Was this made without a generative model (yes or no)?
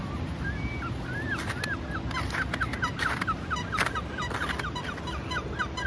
yes